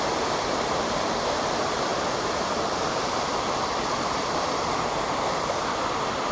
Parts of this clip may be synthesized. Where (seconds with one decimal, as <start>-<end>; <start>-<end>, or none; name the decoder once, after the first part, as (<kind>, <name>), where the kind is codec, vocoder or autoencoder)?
1.9-5.6 (vocoder, BigVGAN v2)